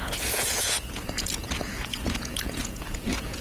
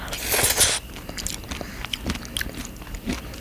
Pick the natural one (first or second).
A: second